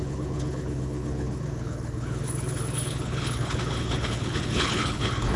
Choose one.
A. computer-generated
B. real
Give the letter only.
A